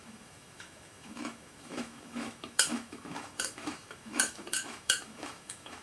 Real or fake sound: fake